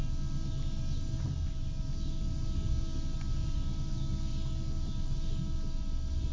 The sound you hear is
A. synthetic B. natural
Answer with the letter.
B